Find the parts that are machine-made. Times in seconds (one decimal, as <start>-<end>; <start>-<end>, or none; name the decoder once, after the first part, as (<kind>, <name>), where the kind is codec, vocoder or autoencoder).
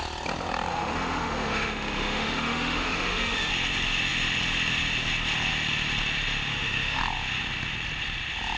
0.7-3.5 (autoencoder, DAC-VAE); 6.5-7.0